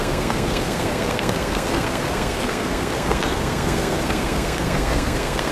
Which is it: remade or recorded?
remade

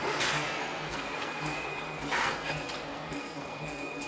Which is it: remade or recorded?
remade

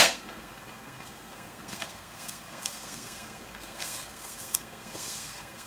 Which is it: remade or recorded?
remade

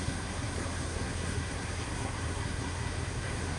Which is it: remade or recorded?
remade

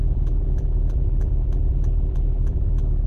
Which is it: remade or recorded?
remade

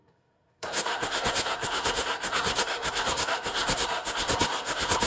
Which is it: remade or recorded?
remade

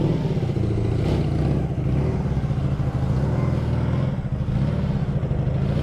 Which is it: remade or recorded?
recorded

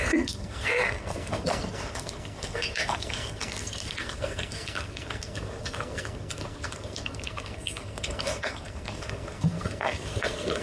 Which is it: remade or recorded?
remade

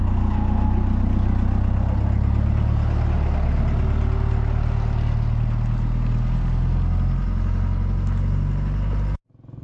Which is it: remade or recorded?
recorded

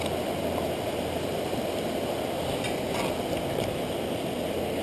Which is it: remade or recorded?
recorded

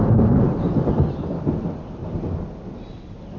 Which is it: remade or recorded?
recorded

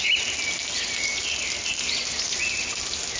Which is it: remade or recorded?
recorded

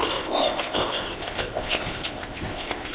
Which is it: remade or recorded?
remade